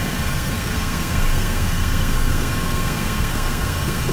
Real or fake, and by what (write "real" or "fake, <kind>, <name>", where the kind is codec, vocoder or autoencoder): fake, codec, SNAC